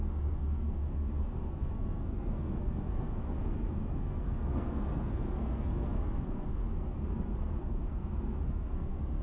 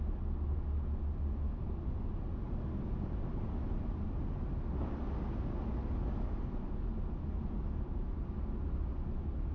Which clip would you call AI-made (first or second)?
first